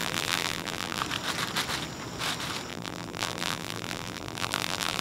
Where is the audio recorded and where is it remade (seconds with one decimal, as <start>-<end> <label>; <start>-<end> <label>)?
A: 0.0-1.0 remade; 1.0-2.7 recorded; 2.7-5.0 remade